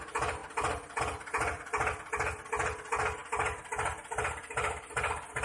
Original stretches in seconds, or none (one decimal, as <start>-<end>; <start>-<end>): 0.0-5.4